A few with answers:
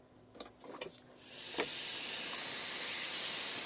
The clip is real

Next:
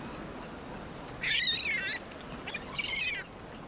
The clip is real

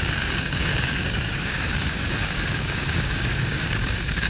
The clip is fake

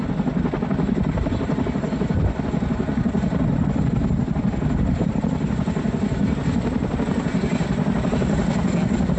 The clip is real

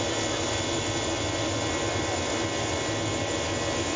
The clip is real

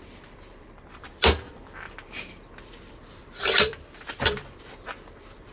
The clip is fake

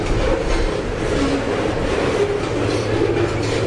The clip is real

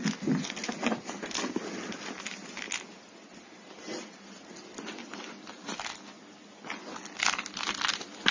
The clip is real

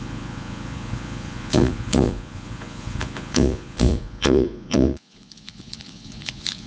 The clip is fake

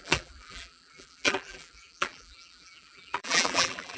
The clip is fake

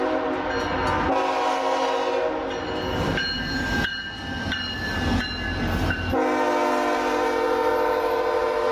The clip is real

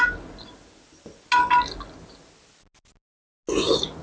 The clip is real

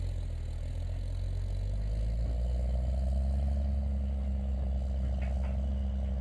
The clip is real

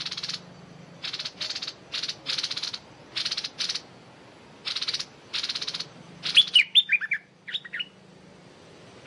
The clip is real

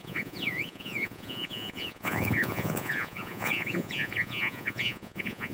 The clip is fake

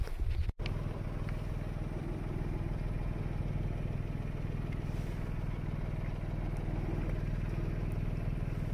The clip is real